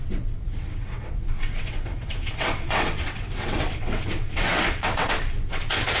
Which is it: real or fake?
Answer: fake